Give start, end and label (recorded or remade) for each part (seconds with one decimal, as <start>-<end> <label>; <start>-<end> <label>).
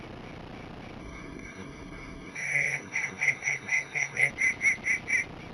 0.0-1.0 recorded; 1.0-4.3 remade; 4.3-5.5 recorded